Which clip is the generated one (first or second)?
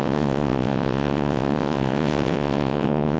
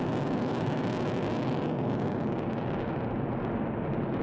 first